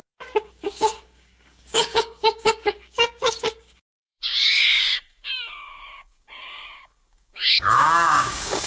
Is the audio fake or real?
fake